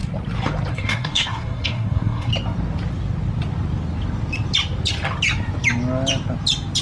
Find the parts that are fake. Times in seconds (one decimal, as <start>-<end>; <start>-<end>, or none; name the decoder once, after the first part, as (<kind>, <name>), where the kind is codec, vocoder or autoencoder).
0.7-2.3 (codec, SNAC)